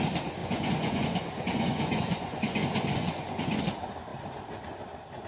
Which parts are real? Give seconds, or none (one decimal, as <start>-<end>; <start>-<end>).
0.0-0.4; 3.6-5.3